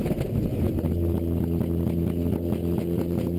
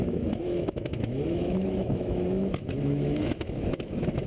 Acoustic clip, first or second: first